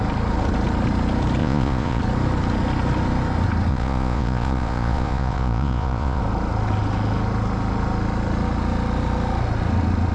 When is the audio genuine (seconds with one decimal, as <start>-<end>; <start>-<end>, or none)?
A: 0.0-1.4; 2.0-3.7; 6.2-10.1